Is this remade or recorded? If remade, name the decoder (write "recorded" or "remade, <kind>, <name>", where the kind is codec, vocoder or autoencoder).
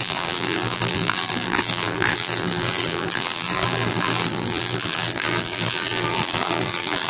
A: remade, vocoder, BigVGAN v2